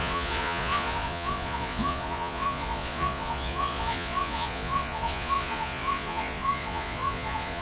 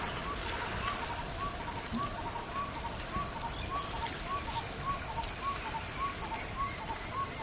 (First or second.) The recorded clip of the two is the second